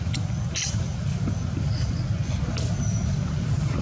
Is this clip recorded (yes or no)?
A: yes